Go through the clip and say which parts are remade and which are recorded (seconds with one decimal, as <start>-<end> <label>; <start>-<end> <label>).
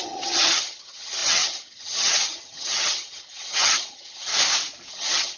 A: 0.0-4.3 remade; 4.3-4.9 recorded; 4.9-5.4 remade